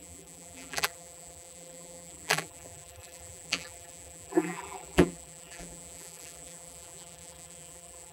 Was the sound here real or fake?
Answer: fake